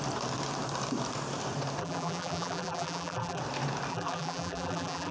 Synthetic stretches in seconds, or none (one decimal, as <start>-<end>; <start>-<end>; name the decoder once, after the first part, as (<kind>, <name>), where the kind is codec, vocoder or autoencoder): 1.8-3.4 (vocoder, BigVGAN v2); 3.9-5.1